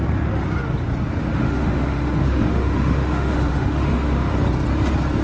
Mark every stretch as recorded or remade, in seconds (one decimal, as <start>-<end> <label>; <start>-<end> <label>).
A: 0.0-1.2 recorded; 1.2-4.3 remade; 4.3-5.2 recorded